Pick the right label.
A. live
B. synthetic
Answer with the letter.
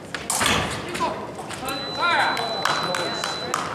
A